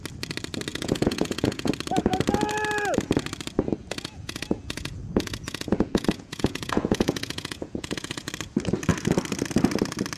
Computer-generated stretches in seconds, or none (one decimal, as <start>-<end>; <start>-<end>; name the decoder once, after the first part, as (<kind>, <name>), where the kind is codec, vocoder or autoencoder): 0.7-1.7 (vocoder, Vocos); 3.8-8.3